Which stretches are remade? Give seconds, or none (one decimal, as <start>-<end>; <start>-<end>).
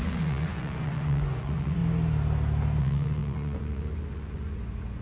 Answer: 0.0-1.8; 2.8-5.0